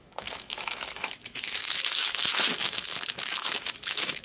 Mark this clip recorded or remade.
remade